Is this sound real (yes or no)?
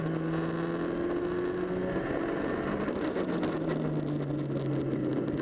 yes